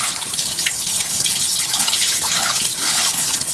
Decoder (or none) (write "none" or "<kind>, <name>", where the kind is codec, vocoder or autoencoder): codec, HILCodec